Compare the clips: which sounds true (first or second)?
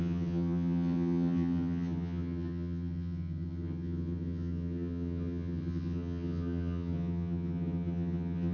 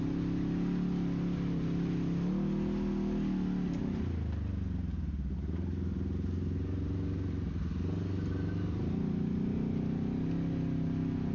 second